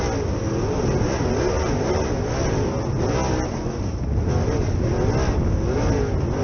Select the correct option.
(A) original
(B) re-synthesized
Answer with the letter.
A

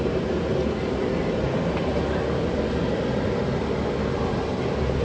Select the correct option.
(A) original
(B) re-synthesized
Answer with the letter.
A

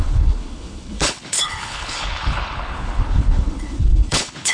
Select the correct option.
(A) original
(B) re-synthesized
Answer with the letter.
B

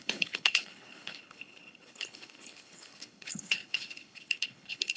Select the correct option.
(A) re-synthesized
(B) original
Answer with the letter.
A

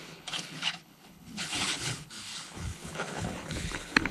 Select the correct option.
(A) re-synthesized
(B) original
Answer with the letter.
A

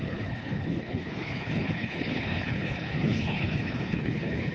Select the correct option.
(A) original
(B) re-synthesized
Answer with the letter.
B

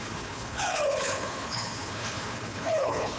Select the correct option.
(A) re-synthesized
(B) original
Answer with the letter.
A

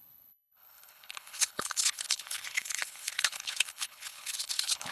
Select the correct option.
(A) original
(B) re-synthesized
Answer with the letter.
B